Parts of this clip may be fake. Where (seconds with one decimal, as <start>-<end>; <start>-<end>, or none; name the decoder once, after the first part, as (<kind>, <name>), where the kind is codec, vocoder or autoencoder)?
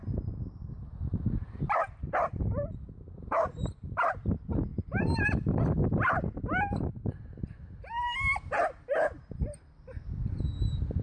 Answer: 4.7-5.6 (vocoder, BigVGAN v2)